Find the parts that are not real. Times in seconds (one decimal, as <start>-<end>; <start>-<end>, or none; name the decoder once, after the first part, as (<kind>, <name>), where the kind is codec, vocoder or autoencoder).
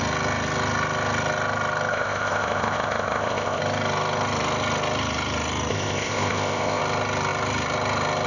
1.9-3.6 (codec, ZipCodec); 5.7-6.8